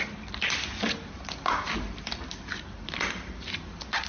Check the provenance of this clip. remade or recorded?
recorded